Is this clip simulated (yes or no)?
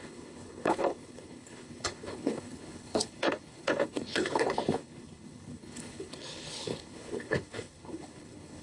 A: yes